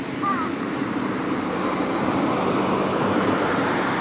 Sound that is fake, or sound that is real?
fake